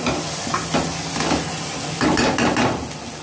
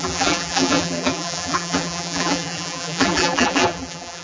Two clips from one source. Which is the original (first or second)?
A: first